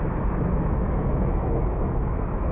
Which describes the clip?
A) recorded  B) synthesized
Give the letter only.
B